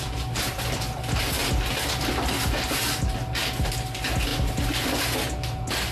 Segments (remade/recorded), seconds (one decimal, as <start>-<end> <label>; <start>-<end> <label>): 0.0-5.9 recorded